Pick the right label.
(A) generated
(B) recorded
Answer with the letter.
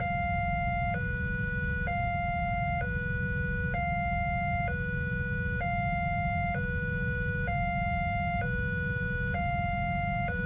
B